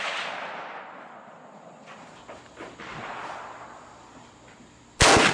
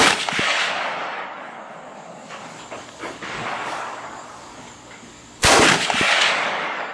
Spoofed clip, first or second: second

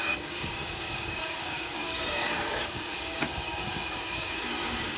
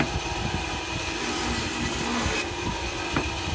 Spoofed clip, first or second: first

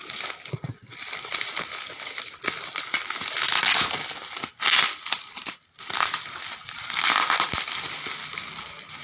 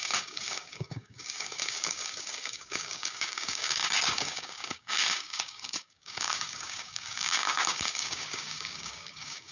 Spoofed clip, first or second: second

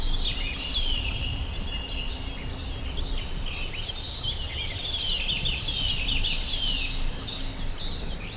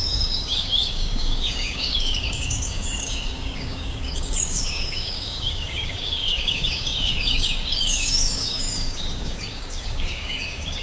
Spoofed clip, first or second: second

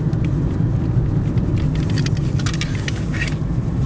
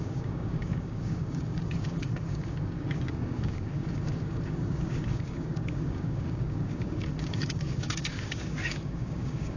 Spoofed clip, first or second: second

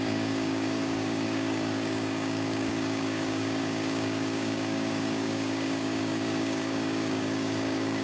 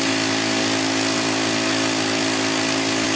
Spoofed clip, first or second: first